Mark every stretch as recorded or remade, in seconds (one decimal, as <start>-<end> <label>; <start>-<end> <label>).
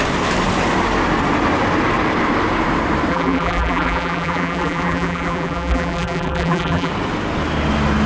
0.0-3.1 recorded; 3.1-6.9 remade; 6.9-8.1 recorded